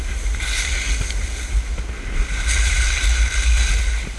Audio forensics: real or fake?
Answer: real